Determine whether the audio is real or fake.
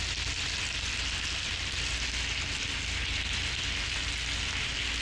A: real